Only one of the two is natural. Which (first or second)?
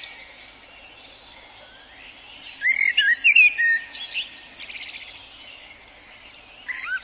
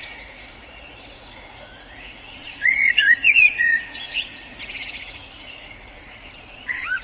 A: first